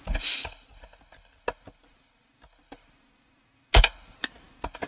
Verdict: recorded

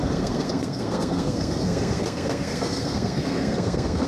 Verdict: remade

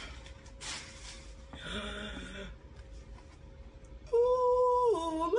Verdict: recorded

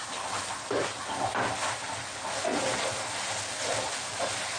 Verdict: recorded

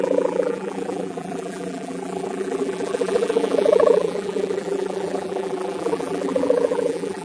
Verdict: remade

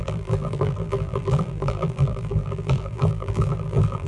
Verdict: remade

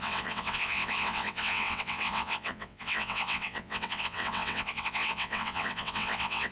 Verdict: remade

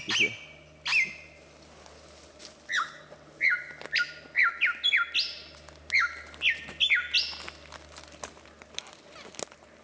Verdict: recorded